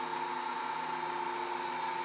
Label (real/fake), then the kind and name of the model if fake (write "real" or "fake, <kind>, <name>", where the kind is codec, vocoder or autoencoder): real